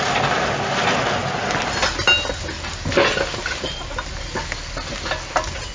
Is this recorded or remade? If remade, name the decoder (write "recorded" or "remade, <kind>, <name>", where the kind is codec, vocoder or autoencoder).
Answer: recorded